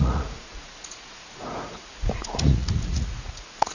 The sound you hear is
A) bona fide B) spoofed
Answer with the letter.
B